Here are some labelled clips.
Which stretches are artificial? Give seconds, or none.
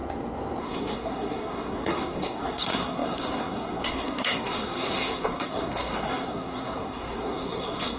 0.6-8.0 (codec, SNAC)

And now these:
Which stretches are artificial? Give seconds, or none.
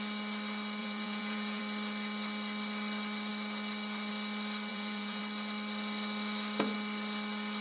0.8-1.6 (vocoder, Vocos); 4.7-5.2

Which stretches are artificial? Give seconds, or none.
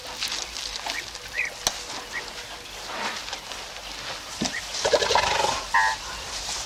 none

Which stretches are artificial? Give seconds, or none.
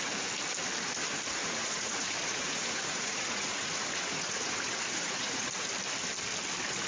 1.4-5.5 (vocoder, Vocos)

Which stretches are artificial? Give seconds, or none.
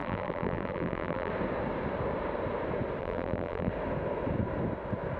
0.0-1.3 (vocoder, BigVGAN v2); 3.0-3.7